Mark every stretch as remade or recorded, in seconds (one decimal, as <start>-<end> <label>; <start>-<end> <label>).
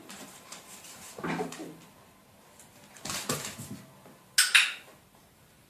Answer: 0.0-1.6 remade; 1.6-5.0 recorded; 5.0-5.7 remade